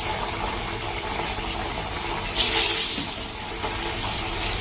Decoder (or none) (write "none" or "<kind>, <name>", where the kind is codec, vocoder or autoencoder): none